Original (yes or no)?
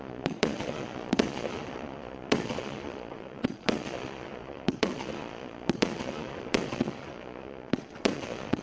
no